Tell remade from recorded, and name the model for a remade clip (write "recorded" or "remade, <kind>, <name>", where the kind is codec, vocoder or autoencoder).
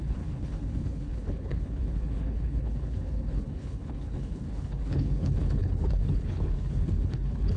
remade, codec, HILCodec